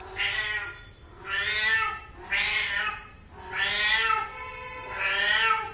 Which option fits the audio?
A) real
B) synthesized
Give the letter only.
A